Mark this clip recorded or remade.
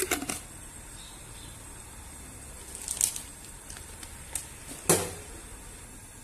recorded